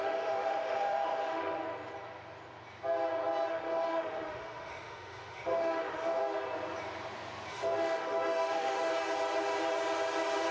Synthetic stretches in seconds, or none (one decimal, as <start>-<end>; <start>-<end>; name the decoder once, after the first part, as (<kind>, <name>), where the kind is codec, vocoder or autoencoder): 0.0-1.6 (autoencoder, DAC-VAE); 3.5-6.2; 7.5-8.9